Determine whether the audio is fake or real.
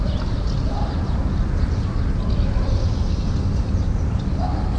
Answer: real